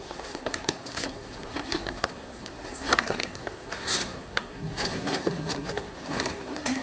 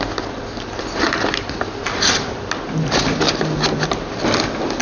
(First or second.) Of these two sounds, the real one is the second